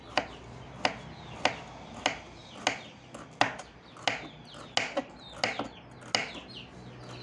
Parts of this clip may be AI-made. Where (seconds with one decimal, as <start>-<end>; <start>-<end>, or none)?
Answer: none